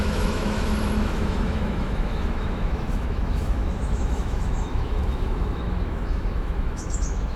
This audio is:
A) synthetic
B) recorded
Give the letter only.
A